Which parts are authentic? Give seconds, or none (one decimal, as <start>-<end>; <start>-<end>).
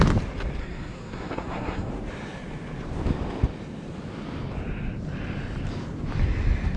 0.0-0.6; 1.9-6.8